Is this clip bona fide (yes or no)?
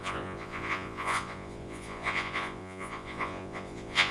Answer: no